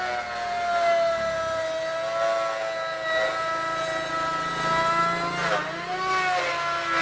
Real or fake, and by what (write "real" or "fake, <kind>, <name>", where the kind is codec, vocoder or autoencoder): real